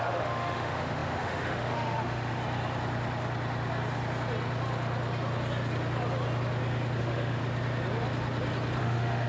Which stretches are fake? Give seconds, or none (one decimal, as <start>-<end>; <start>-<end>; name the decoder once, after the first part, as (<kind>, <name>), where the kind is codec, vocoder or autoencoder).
0.0-2.4 (autoencoder, DAC-VAE); 7.0-7.4; 8.8-9.3